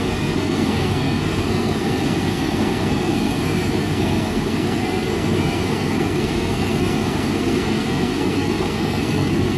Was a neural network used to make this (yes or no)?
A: yes